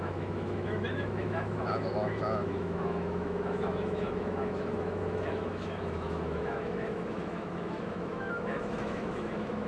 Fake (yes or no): yes